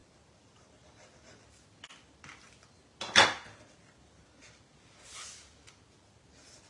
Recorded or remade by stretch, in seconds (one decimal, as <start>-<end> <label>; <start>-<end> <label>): 0.0-6.7 recorded